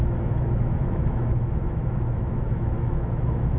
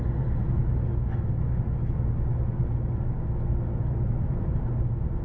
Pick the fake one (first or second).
first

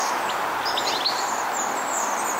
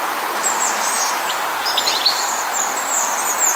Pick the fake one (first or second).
second